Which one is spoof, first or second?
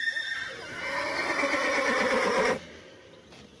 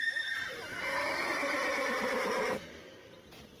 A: second